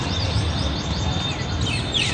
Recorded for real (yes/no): yes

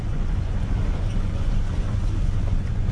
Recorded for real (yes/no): no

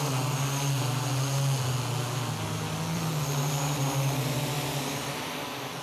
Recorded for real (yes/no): yes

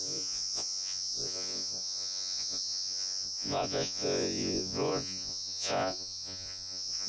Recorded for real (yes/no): no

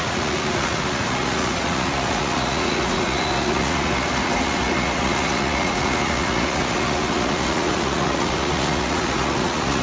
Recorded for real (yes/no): no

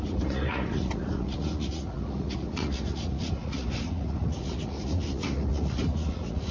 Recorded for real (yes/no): no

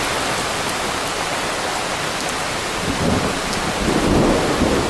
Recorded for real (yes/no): yes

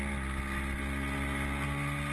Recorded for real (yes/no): yes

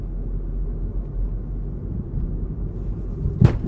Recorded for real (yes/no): yes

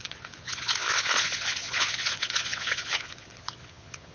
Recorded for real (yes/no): no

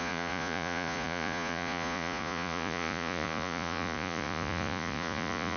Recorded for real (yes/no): no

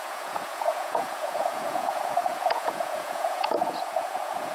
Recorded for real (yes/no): no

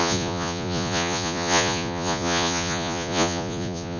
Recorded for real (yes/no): no